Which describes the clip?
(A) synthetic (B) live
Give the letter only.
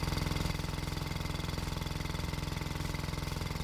B